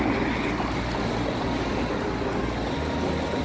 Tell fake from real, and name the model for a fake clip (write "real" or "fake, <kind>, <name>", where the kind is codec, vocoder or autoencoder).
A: real